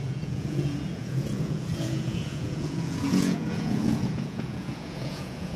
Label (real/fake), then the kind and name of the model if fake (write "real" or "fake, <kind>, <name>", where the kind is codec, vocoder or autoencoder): fake, vocoder, Vocos